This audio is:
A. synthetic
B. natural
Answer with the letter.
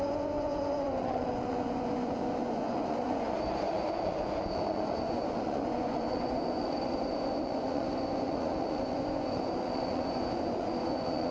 A